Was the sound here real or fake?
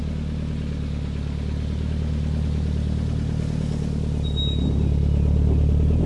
real